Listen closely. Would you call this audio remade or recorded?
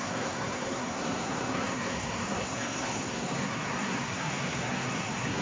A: remade